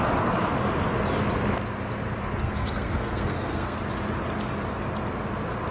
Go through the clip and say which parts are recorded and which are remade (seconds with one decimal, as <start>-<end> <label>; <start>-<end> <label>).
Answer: 0.0-2.4 recorded; 2.4-3.8 remade; 3.8-5.7 recorded